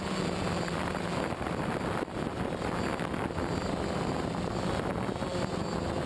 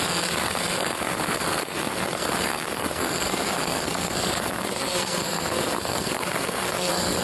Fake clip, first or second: second